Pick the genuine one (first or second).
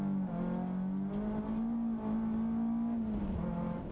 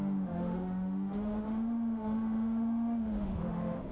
first